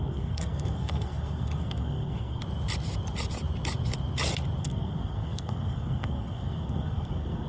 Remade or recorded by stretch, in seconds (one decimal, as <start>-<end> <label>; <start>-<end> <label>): 0.0-2.4 remade; 2.4-4.6 recorded; 4.6-7.5 remade